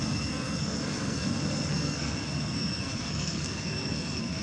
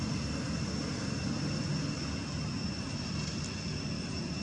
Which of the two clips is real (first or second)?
second